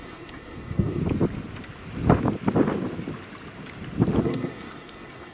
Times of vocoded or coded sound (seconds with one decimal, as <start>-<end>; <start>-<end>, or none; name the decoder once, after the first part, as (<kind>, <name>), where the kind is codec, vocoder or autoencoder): 0.0-1.0 (codec, SNAC); 4.2-5.3